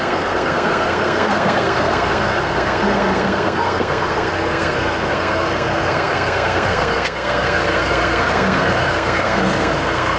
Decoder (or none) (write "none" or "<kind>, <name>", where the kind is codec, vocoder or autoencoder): codec, SNAC